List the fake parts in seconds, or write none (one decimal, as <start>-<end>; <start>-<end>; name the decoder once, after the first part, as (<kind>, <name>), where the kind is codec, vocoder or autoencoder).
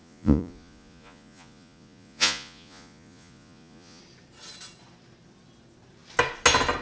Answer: 0.0-4.0 (vocoder, Vocos)